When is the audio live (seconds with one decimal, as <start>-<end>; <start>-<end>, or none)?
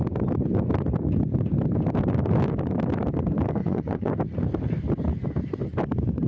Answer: 0.0-3.6; 4.1-6.3